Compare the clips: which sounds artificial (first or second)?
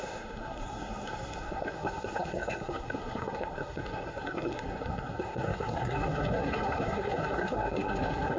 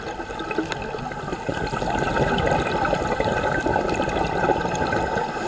first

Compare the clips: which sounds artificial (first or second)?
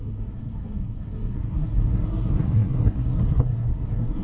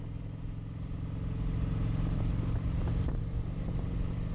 first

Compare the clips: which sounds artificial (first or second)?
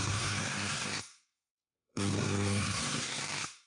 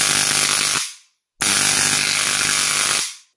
first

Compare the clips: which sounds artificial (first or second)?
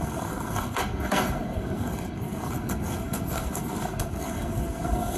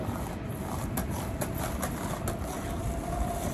first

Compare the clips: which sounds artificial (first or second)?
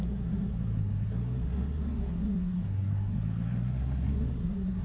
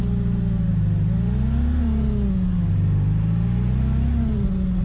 first